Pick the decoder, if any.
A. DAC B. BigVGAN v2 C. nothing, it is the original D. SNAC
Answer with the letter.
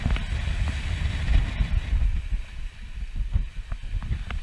C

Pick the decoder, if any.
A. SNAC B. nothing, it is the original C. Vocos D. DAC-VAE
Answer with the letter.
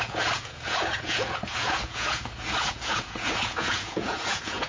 C